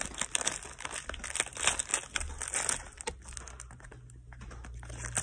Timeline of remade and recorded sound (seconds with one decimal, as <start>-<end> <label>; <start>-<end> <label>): 0.0-5.2 recorded